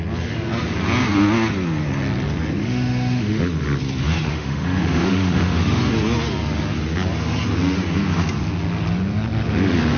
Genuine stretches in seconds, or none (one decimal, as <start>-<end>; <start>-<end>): 0.0-2.6; 3.4-4.3; 5.8-10.0